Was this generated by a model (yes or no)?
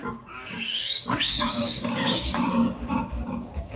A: yes